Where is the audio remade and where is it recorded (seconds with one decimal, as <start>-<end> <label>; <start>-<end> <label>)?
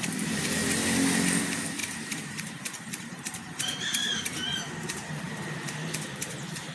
0.0-0.6 remade; 0.6-1.4 recorded; 1.4-6.7 remade